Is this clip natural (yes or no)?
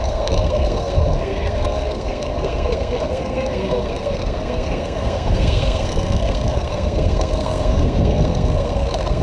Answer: no